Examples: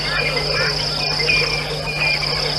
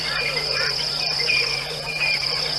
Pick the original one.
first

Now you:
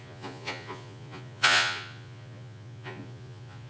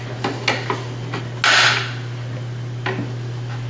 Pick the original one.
second